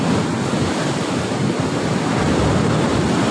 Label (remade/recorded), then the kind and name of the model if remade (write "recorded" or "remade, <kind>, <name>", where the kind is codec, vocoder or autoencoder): recorded